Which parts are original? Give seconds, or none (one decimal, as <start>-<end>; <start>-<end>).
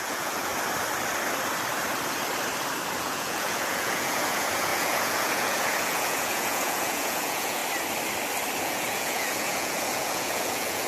0.5-3.0; 7.6-8.6